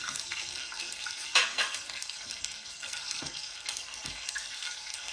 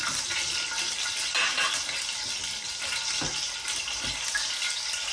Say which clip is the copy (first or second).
first